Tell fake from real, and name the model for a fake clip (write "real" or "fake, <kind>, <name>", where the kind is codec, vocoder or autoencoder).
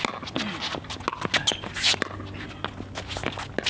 real